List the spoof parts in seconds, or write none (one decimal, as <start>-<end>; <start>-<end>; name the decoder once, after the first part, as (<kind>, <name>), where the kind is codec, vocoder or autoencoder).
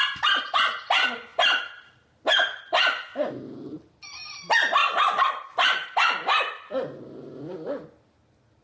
none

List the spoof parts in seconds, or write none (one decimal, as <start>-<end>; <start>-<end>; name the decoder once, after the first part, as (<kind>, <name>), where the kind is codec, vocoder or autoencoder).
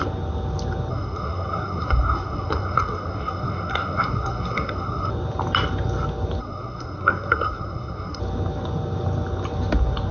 0.9-5.1 (codec, SNAC); 6.4-8.2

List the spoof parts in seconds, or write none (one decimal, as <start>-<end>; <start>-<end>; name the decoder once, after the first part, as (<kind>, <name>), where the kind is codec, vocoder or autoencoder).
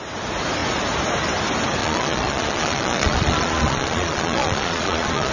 1.8-5.3 (vocoder, Vocos)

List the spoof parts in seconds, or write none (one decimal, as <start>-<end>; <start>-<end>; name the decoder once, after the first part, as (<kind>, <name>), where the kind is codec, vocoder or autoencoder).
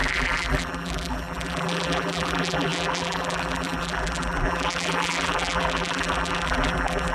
0.0-7.1 (vocoder, BigVGAN v2)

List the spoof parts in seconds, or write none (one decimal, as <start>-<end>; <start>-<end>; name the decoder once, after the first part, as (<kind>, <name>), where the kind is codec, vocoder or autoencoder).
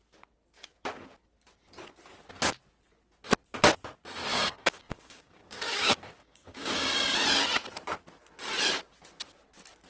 4.3-6.9 (codec, DAC)